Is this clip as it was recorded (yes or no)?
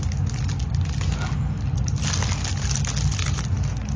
yes